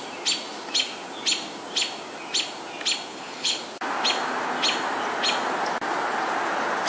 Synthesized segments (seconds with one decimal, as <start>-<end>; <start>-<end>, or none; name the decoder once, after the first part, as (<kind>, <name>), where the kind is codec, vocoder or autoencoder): 3.1-3.6 (codec, HILCodec)